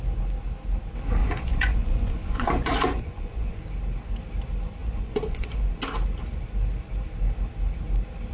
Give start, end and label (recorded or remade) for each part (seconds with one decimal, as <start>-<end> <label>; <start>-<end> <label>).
0.0-1.2 recorded; 1.2-3.6 remade; 3.6-4.8 recorded; 4.8-5.7 remade; 5.7-8.3 recorded